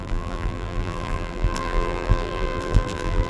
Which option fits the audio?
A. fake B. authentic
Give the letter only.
A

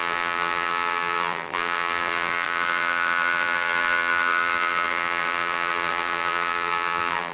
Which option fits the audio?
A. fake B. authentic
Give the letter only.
A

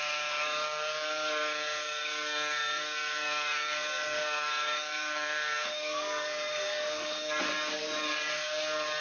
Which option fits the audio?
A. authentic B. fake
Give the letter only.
B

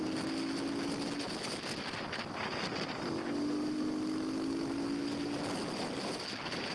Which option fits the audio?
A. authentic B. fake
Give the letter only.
A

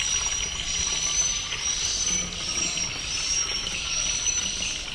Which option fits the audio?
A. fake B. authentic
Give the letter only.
B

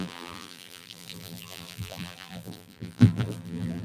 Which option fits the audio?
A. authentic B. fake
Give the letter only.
B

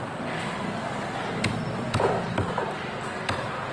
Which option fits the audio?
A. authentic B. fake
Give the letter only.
A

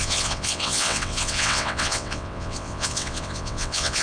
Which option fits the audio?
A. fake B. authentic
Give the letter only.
A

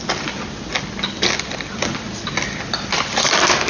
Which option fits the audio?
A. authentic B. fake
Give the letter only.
A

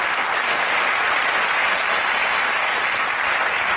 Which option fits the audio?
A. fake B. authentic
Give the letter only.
B